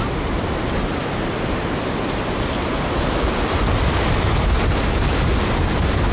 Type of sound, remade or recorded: recorded